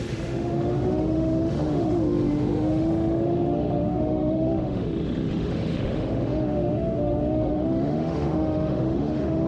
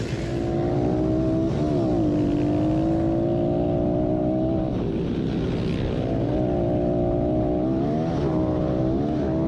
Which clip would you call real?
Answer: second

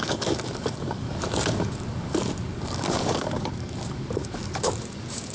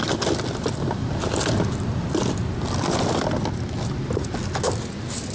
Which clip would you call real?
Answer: second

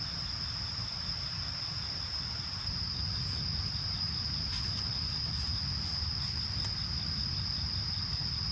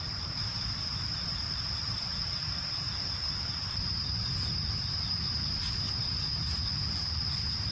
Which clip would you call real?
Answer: first